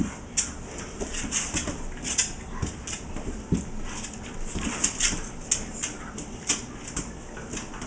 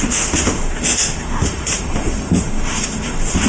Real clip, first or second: first